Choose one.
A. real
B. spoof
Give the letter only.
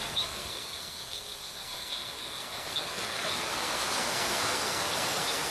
B